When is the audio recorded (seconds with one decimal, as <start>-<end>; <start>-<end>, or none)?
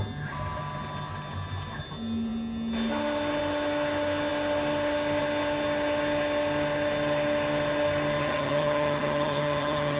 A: 0.0-8.2